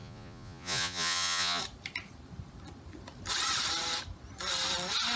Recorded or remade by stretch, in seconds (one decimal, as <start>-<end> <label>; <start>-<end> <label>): 0.0-1.6 remade; 1.6-5.2 recorded